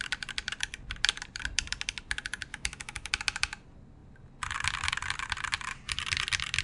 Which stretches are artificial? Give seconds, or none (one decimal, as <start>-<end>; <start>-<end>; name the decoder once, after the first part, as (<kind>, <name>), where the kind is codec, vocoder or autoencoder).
2.5-3.1 (autoencoder, DAC-VAE)